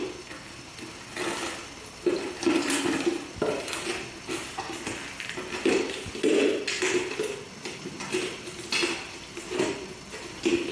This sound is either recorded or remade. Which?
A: recorded